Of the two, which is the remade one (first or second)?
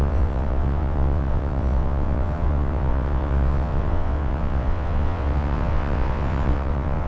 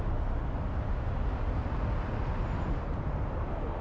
first